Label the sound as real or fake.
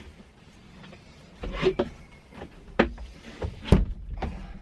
real